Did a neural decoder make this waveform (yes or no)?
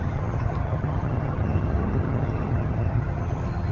yes